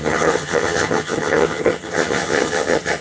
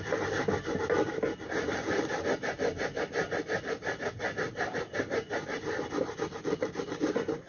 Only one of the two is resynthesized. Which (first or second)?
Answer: first